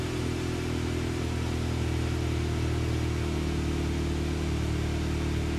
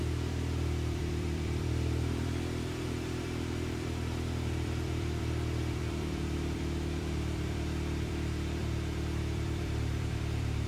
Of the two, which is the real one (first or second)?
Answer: first